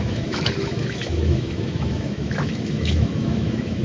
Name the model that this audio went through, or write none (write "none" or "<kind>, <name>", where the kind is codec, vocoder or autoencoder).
autoencoder, DAC-VAE